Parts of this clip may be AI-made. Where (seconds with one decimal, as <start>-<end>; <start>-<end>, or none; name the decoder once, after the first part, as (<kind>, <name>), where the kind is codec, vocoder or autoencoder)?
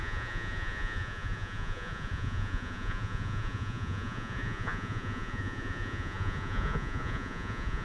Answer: 0.0-7.8 (vocoder, Vocos)